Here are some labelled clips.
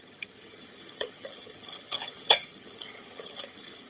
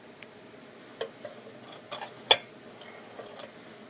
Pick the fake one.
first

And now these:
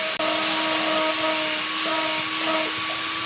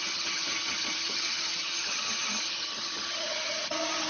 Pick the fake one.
second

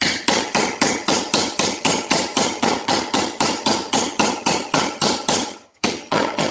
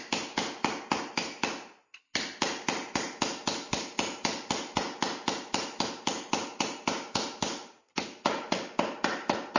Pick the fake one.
first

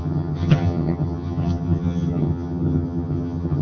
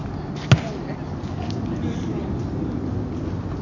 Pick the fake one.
first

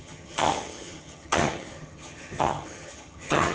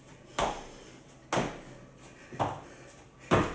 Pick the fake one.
first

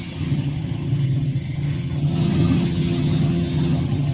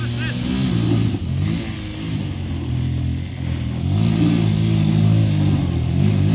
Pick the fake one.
first